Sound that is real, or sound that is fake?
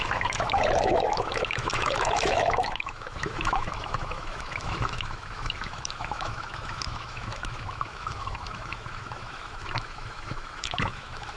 fake